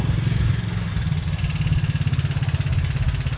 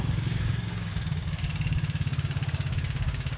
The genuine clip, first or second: first